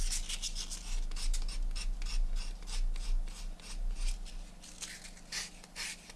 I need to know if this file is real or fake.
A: real